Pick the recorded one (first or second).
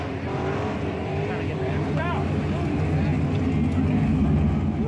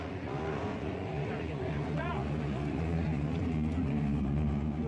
first